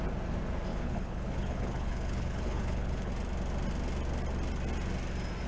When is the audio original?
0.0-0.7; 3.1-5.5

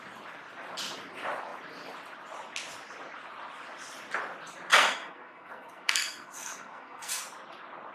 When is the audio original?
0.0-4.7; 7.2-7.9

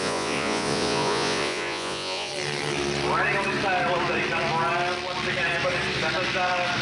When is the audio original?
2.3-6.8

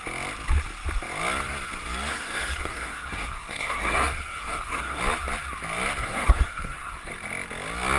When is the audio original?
0.0-2.1; 5.0-6.0; 7.1-8.0

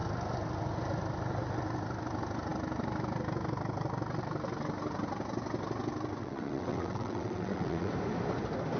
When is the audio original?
0.0-6.2; 7.9-8.8

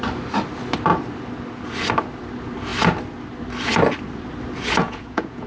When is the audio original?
0.0-4.8

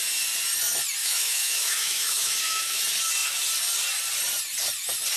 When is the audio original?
0.0-1.0; 2.8-5.2